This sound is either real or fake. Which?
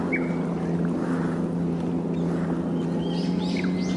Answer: real